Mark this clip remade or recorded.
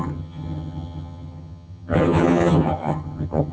remade